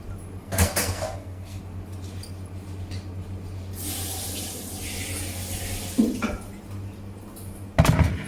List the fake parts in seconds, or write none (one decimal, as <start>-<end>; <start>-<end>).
0.4-1.6